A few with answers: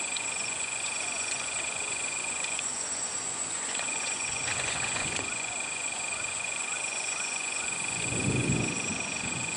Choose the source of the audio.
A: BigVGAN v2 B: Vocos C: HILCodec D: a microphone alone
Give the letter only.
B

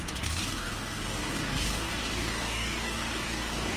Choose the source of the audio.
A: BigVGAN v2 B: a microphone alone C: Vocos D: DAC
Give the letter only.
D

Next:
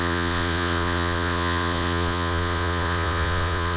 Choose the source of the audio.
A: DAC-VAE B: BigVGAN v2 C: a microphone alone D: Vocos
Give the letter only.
D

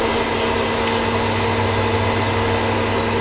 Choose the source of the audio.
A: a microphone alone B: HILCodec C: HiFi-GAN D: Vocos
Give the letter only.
A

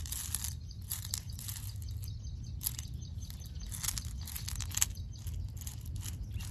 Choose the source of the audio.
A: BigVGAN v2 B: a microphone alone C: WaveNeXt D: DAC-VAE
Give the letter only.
B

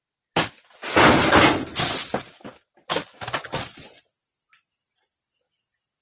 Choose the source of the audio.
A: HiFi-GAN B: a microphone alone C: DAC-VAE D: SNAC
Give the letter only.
B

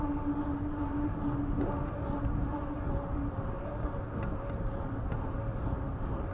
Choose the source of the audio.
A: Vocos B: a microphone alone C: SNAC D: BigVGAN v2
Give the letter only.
B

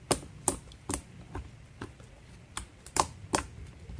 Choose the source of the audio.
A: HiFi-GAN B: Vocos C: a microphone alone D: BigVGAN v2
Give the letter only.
C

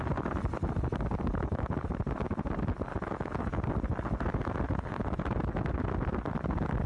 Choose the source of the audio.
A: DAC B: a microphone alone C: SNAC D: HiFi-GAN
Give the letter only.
B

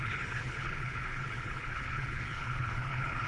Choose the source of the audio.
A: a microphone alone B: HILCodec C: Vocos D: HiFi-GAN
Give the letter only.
B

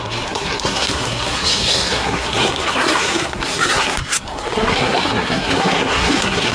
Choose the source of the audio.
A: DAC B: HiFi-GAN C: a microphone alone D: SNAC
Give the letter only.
D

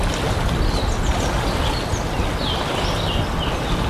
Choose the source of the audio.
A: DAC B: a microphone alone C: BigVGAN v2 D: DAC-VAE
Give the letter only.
B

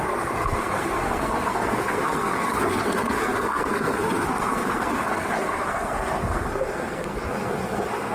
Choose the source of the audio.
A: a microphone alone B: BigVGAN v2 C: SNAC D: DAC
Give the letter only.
C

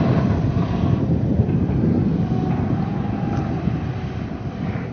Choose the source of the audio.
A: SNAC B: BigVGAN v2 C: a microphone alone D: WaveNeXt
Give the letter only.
B